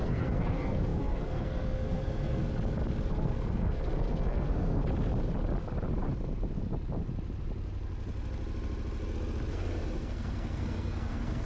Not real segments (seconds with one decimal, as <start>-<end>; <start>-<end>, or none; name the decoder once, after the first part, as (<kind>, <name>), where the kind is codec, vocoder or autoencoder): 0.0-2.4 (codec, SNAC); 3.1-4.8; 9.5-11.5